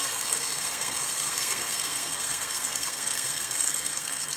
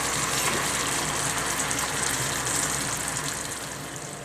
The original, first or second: second